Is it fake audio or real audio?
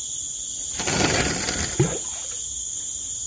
real